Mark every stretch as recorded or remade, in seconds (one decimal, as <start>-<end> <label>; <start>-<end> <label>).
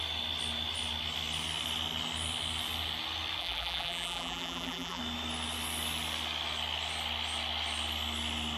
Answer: 0.0-3.4 recorded; 3.4-5.0 remade; 5.0-8.6 recorded